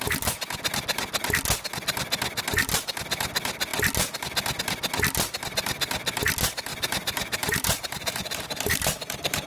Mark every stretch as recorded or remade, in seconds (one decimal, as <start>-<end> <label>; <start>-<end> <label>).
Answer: 0.0-6.7 recorded; 6.7-9.5 remade